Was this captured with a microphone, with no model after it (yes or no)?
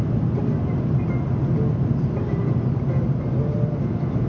yes